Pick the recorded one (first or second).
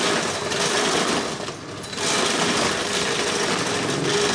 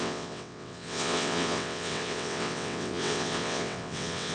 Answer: first